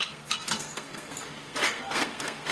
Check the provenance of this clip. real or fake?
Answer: fake